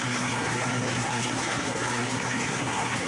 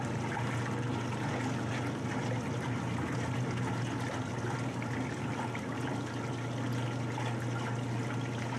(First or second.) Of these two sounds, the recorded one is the second